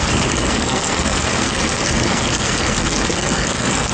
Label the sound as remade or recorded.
remade